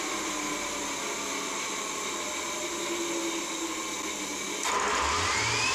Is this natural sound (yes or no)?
yes